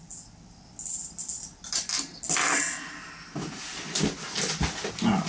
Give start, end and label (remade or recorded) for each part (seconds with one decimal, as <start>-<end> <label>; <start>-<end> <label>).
0.0-5.3 recorded